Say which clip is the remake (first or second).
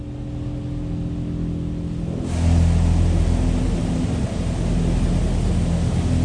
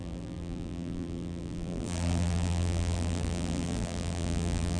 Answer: second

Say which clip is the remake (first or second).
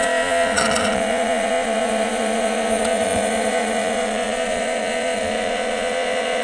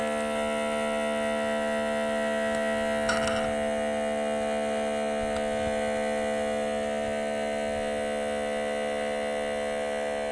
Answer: first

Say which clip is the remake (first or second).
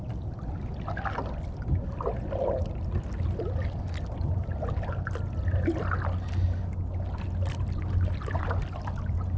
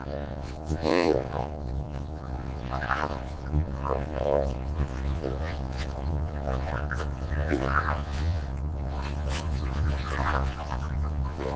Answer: second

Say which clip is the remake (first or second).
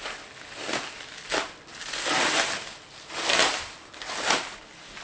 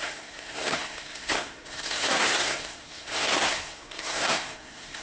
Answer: second